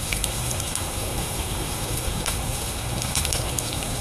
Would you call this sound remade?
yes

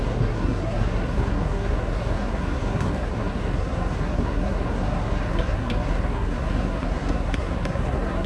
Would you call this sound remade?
yes